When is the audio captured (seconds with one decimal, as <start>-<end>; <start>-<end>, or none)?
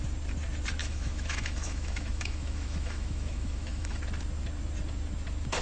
0.0-0.8; 4.0-5.6